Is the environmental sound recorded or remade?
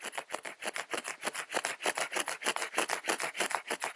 recorded